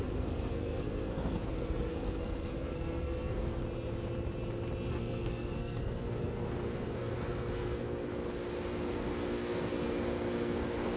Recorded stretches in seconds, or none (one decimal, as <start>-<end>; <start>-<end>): 3.6-4.9; 8.1-8.9